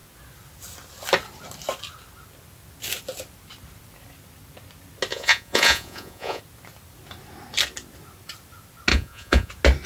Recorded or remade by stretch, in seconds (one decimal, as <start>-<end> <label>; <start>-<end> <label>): 0.0-5.1 recorded; 5.1-6.4 remade; 6.4-8.9 recorded; 8.9-9.5 remade; 9.5-9.9 recorded